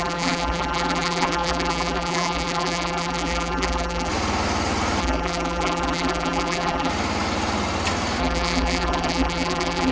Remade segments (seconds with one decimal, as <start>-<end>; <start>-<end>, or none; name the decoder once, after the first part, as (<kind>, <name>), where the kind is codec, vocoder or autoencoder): 0.0-4.1 (vocoder, BigVGAN v2); 5.0-6.9; 8.2-9.9